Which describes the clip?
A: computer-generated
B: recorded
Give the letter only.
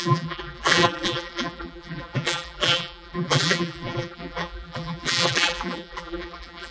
A